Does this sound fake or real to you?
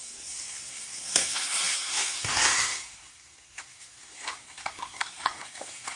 fake